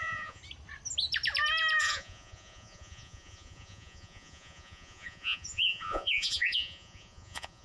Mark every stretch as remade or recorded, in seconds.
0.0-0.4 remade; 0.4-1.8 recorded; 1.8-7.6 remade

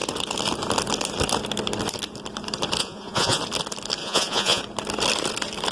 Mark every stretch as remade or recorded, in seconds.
0.0-2.8 recorded; 2.8-3.4 remade; 3.4-4.0 recorded; 4.0-4.6 remade; 4.6-5.7 recorded

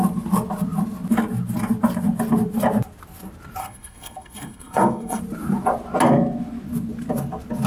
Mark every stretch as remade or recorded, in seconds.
0.0-3.6 recorded; 3.6-5.2 remade; 5.2-7.7 recorded

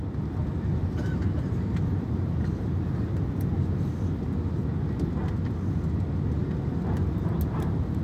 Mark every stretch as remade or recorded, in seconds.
0.0-0.8 recorded; 0.8-4.0 remade; 4.0-8.0 recorded

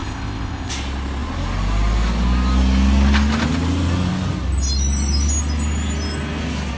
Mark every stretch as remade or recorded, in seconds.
0.0-0.7 remade; 0.7-6.8 recorded